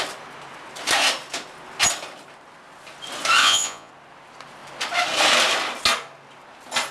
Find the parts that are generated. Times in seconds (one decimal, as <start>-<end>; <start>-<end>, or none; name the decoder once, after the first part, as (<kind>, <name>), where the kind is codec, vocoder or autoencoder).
3.4-3.9 (vocoder, Vocos)